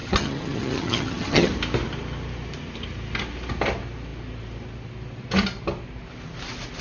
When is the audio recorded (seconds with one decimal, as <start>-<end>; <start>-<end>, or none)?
1.5-6.8